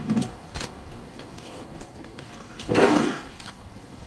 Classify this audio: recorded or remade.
remade